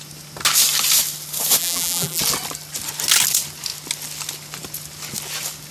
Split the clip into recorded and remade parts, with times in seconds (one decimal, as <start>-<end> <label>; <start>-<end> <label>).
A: 0.0-1.6 recorded; 1.6-2.2 remade; 2.2-5.7 recorded